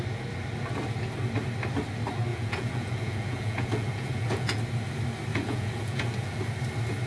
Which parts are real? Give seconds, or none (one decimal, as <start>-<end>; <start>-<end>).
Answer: 0.0-2.3; 4.6-5.3; 6.4-7.1